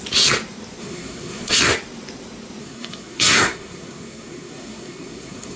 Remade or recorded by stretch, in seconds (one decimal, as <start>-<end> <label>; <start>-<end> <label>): 0.0-0.8 recorded; 0.8-1.6 remade; 1.6-2.6 recorded; 2.6-5.6 remade

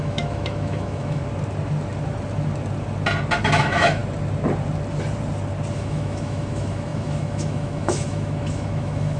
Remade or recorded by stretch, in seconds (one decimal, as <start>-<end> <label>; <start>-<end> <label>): 0.0-1.2 remade; 1.2-3.4 recorded; 3.4-4.0 remade; 4.0-5.7 recorded; 5.7-9.2 remade

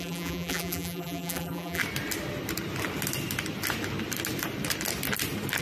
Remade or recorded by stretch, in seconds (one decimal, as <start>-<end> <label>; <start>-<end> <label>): 0.0-1.8 remade; 1.8-5.6 recorded

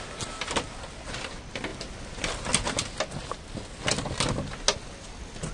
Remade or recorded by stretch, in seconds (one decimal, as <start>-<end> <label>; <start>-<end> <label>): 0.0-5.5 recorded

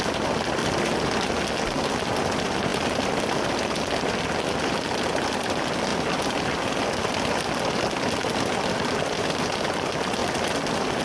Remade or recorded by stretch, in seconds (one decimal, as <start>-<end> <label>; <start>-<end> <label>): 0.0-0.6 recorded; 0.6-1.3 remade; 1.3-2.7 recorded; 2.7-3.5 remade; 3.5-5.9 recorded; 5.9-7.3 remade; 7.3-10.2 recorded; 10.2-11.0 remade

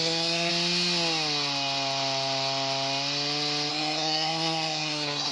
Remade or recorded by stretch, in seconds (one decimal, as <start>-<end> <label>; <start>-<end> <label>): 0.0-0.5 remade; 0.5-3.7 recorded; 3.7-5.3 remade